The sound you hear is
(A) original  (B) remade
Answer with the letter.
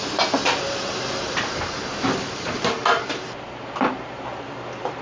B